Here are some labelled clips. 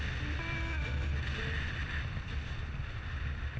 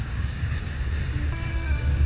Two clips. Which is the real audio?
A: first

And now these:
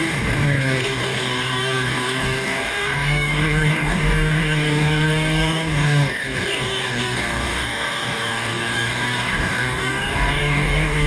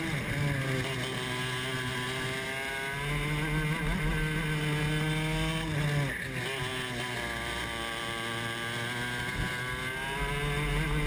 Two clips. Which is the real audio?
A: second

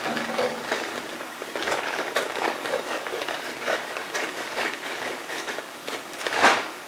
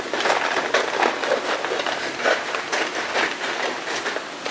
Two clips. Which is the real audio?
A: second